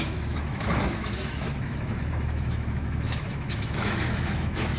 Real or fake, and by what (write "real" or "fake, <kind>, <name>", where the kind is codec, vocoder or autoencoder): fake, autoencoder, DAC-VAE